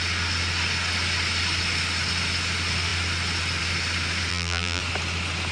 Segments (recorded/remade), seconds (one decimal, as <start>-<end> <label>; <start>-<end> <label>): 0.0-4.3 recorded; 4.3-4.8 remade; 4.8-5.5 recorded